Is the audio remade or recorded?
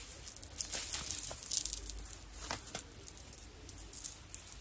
recorded